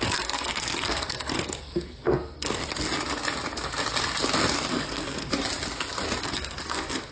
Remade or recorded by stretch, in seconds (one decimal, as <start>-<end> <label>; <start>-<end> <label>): 0.0-2.6 remade; 2.6-4.7 recorded; 4.7-5.3 remade; 5.3-6.2 recorded; 6.2-7.1 remade